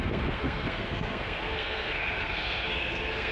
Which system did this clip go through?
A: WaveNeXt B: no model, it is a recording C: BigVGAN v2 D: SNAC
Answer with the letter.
D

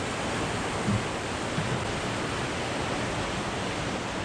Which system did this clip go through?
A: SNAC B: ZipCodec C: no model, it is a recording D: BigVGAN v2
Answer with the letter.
C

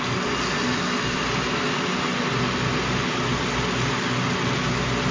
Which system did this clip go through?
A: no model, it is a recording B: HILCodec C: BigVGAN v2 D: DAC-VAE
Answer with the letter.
A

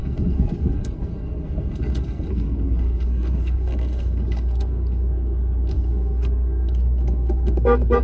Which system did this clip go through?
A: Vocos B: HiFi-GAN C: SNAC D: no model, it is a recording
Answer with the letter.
C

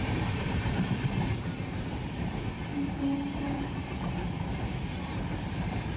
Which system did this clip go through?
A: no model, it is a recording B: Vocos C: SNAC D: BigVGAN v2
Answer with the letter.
D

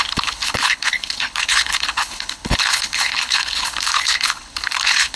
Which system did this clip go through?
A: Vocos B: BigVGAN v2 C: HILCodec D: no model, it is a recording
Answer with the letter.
C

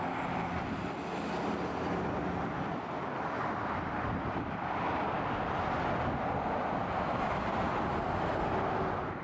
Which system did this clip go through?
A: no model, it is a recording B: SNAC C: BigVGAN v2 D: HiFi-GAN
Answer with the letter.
A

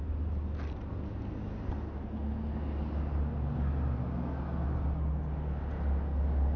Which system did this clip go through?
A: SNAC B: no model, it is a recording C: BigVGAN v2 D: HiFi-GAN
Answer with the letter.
B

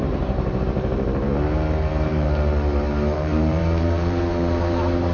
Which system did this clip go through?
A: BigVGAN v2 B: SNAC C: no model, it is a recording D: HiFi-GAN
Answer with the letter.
A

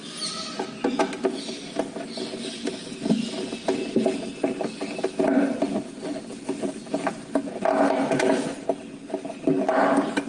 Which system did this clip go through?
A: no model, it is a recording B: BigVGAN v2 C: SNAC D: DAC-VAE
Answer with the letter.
A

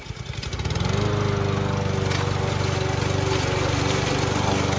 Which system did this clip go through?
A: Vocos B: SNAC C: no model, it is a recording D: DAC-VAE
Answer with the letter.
C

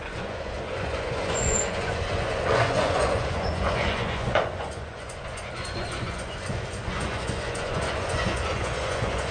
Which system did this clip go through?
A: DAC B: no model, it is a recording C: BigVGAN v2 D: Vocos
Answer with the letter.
D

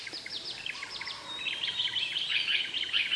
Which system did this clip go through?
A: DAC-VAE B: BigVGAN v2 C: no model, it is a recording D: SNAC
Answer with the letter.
B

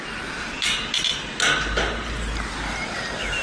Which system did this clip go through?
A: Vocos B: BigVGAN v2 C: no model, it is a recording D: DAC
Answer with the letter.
C